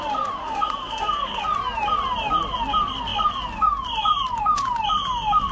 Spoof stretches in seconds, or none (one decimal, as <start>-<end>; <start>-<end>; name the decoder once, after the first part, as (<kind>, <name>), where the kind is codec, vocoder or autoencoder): 0.4-1.4 (codec, SNAC)